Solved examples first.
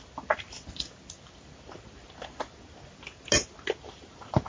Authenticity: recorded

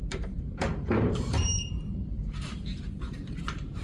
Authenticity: remade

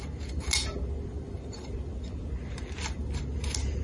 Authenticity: recorded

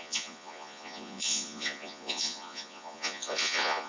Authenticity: remade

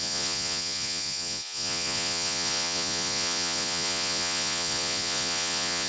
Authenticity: remade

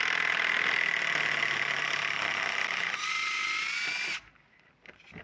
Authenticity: recorded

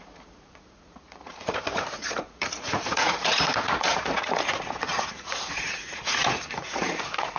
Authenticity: remade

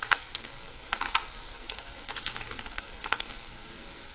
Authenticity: remade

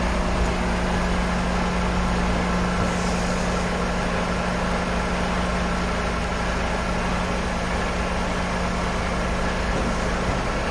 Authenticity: recorded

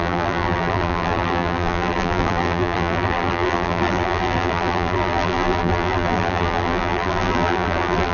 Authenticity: remade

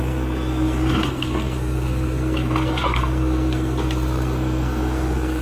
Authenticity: remade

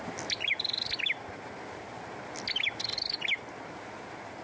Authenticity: recorded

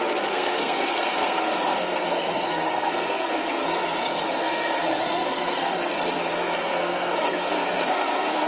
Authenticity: remade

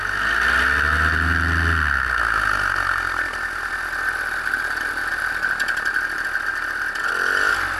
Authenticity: recorded